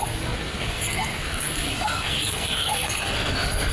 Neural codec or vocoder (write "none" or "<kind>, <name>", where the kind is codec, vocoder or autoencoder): codec, SNAC